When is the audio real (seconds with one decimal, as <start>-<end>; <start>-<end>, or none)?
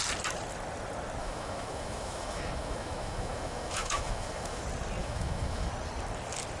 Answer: 0.0-1.2; 4.6-5.0; 5.7-6.6